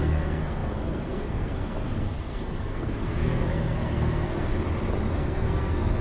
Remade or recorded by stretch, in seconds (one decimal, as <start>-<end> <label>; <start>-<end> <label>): 0.0-4.5 remade; 4.5-5.1 recorded; 5.1-6.0 remade